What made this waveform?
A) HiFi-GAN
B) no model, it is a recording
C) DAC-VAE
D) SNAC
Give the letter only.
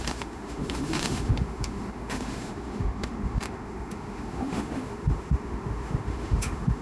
C